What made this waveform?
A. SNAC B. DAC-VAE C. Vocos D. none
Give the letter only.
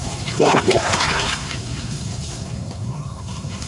A